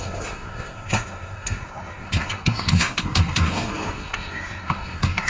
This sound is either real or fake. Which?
fake